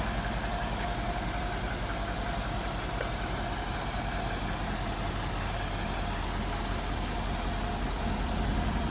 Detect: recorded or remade recorded